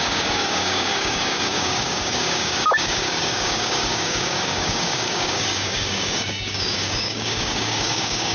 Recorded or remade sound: remade